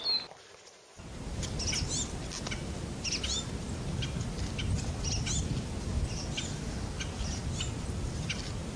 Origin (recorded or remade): recorded